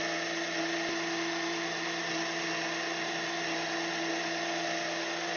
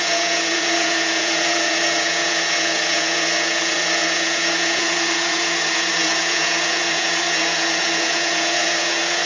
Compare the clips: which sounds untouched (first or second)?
first